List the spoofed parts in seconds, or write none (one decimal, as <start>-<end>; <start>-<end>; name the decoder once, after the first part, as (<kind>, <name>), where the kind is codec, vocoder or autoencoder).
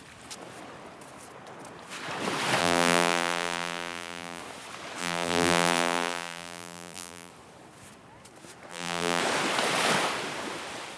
2.6-4.4 (vocoder, BigVGAN v2); 5.0-7.3; 8.7-9.2